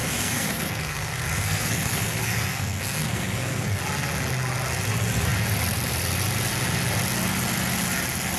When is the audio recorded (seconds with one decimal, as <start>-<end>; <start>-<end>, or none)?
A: 3.8-8.4